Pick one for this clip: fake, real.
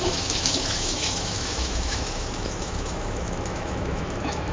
fake